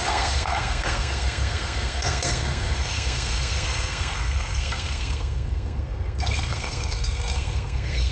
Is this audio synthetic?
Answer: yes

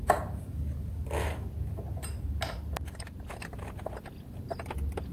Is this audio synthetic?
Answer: no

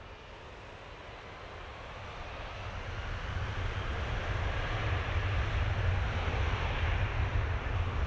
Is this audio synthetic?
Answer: no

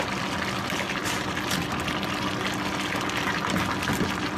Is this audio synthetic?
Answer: no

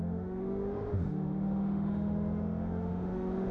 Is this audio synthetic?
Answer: yes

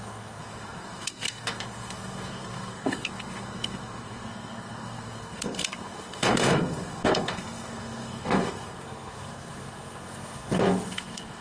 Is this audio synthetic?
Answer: yes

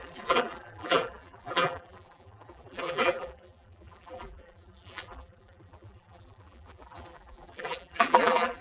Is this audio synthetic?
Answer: yes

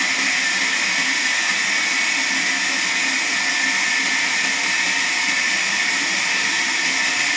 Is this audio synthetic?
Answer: no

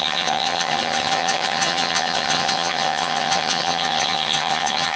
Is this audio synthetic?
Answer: yes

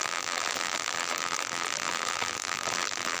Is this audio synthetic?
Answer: yes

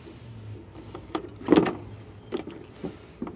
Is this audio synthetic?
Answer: no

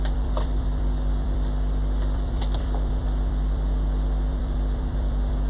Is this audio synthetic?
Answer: yes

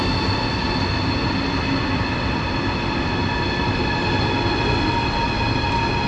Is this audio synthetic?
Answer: no